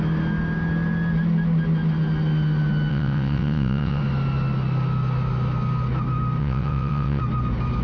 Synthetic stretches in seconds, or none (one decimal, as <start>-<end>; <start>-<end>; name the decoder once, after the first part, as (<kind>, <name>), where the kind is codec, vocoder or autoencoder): 2.9-4.0 (vocoder, WaveNeXt); 6.4-7.2